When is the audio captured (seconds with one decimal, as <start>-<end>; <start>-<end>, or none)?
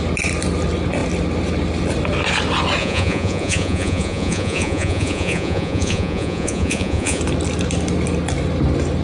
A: 0.0-2.8; 7.2-9.0